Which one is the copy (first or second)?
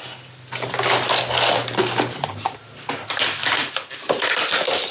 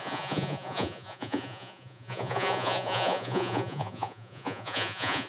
second